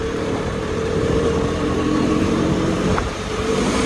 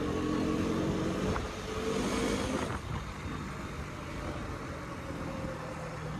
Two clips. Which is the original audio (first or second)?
second